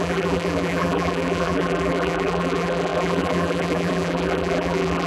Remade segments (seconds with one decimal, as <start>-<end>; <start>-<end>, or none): 0.0-5.1